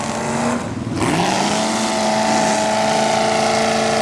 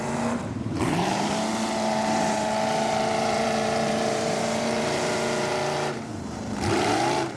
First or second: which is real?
first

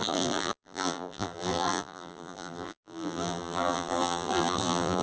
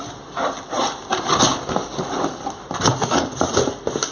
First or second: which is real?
second